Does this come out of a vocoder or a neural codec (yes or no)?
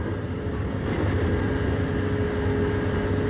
no